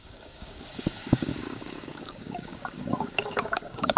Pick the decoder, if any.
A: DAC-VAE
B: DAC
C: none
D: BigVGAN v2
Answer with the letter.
B